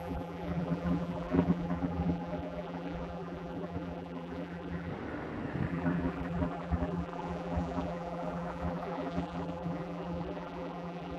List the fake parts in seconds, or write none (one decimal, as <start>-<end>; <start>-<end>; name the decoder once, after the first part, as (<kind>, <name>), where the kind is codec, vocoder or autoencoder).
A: 0.0-4.9 (vocoder, BigVGAN v2); 5.7-11.2